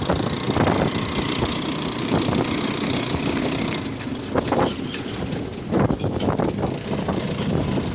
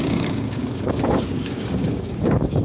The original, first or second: first